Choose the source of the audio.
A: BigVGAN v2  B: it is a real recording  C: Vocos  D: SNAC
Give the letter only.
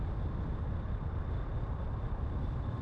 B